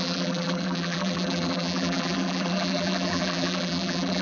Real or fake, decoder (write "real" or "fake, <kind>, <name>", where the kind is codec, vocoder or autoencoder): fake, vocoder, BigVGAN v2